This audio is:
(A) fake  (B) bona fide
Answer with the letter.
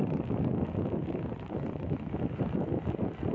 B